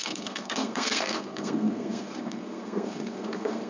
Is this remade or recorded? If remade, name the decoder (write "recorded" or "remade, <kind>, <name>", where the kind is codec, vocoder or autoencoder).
remade, codec, SNAC